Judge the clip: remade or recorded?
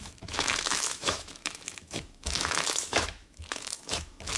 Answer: remade